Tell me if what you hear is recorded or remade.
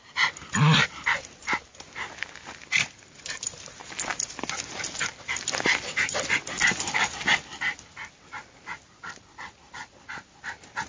recorded